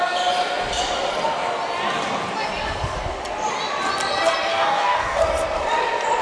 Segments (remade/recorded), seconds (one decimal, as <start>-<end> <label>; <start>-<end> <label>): 0.0-4.5 recorded; 4.5-5.2 remade; 5.2-6.2 recorded

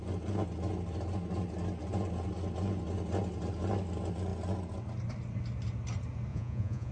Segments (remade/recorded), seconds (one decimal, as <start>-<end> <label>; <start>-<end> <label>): 0.0-6.3 recorded; 6.3-6.9 remade